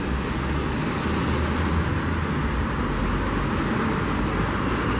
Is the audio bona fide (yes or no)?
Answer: yes